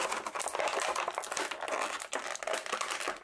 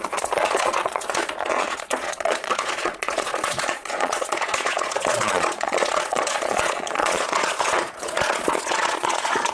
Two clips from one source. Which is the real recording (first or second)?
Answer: first